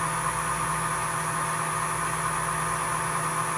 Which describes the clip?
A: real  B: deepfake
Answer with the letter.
A